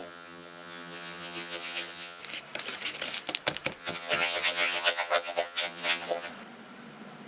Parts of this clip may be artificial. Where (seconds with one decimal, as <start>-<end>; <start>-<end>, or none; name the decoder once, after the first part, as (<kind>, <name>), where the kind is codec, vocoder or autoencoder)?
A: 0.0-2.2 (vocoder, HiFi-GAN); 3.8-6.3